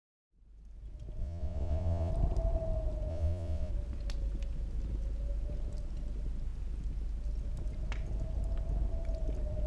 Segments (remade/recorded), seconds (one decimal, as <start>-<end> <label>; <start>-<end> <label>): 0.0-1.2 recorded; 1.2-2.1 remade; 2.1-3.1 recorded; 3.1-3.7 remade; 3.7-9.7 recorded